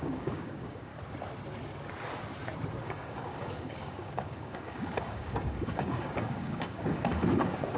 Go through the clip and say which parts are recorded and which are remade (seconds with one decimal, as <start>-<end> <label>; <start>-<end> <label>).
0.0-0.9 remade; 0.9-2.8 recorded; 2.8-7.8 remade